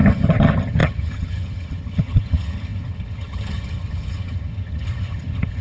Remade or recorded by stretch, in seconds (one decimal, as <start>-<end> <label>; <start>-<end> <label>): 0.0-5.6 remade